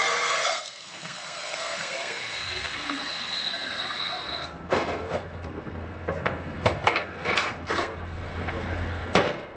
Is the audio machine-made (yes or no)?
yes